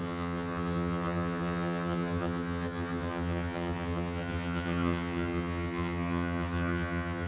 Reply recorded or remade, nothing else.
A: remade